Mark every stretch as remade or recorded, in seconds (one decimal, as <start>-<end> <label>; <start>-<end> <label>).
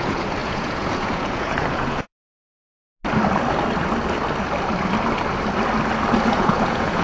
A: 0.0-2.1 remade; 2.1-6.3 recorded; 6.3-7.0 remade